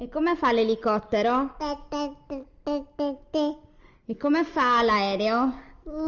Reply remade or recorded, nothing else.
recorded